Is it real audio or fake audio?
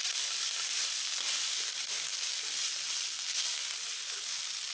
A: real